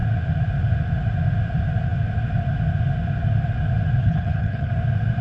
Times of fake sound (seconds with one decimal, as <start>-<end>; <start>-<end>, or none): 4.0-4.7